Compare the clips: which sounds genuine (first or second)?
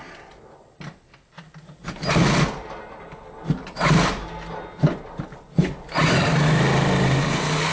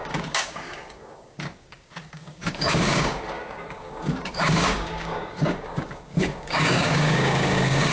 first